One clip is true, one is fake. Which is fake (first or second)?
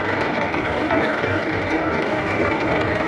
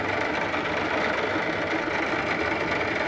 first